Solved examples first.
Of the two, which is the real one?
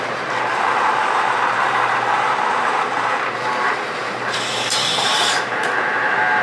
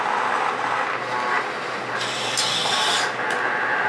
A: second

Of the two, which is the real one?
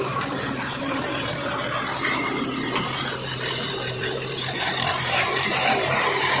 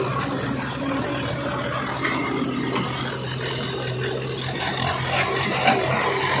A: second